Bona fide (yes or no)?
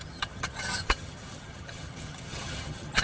no